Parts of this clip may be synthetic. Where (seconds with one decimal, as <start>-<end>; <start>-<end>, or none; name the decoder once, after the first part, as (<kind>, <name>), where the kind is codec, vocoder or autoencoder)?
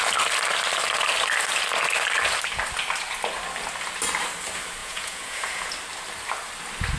4.8-5.7 (vocoder, Vocos)